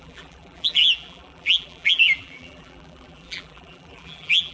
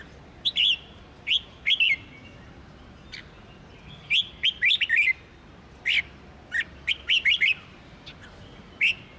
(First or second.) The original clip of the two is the second